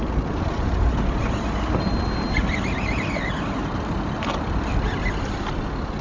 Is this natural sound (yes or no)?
yes